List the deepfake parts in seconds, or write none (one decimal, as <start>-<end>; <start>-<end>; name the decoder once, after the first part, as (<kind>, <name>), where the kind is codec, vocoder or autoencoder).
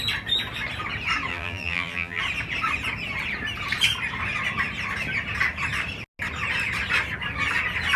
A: 1.3-2.2 (vocoder, BigVGAN v2)